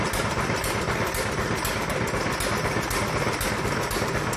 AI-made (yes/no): yes